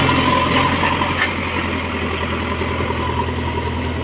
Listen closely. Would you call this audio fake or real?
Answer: real